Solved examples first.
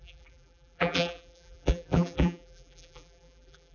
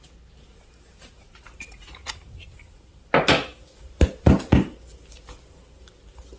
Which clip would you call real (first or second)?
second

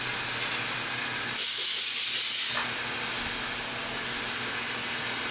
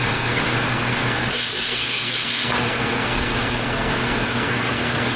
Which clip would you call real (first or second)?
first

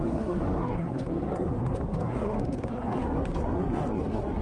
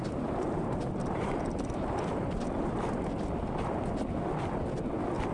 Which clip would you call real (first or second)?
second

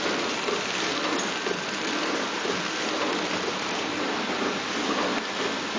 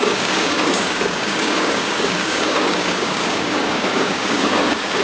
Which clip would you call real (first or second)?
first